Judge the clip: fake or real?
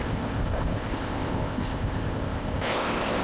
fake